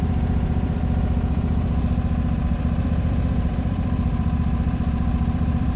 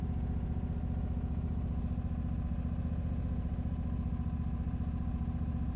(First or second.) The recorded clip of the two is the second